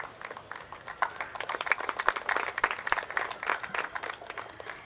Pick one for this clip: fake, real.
real